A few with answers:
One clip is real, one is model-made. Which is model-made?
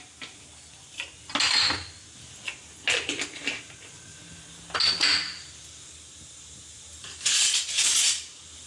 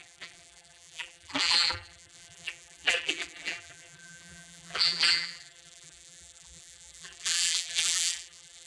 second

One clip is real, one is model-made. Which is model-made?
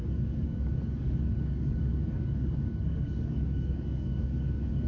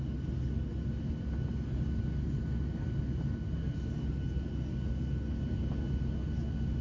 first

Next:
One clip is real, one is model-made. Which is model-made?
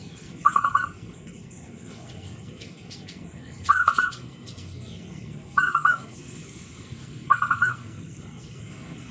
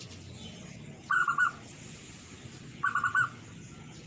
first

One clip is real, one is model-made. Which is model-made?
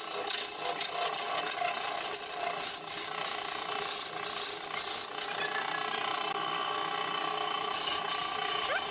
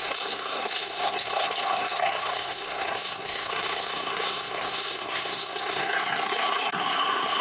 second